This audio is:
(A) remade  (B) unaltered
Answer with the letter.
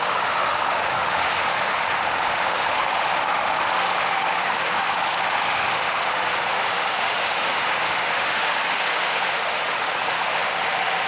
A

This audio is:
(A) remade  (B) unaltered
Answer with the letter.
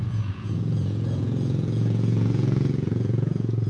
A